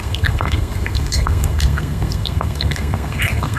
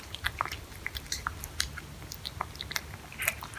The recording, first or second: second